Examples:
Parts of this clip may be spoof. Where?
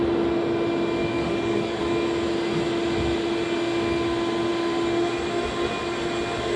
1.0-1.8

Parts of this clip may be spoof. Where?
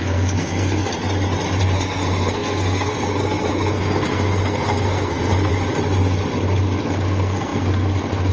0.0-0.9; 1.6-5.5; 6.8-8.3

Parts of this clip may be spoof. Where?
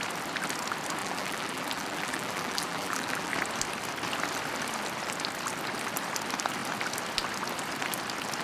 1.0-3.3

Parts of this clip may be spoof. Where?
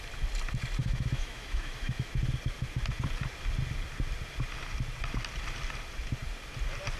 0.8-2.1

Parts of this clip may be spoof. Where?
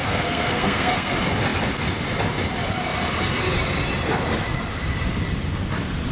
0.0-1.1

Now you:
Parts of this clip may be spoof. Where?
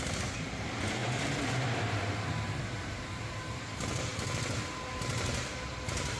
0.0-6.2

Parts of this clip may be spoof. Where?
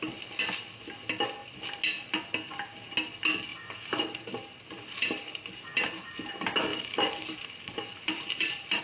3.5-6.3; 6.7-8.8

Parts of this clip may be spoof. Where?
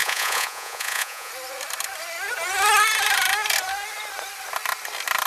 0.0-1.3